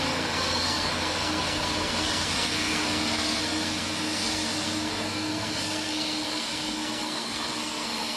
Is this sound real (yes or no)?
no